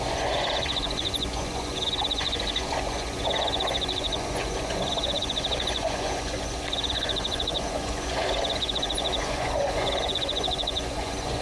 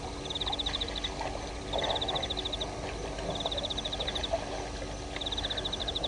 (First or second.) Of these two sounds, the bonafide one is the second